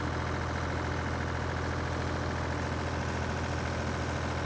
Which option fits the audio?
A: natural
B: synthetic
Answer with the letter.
A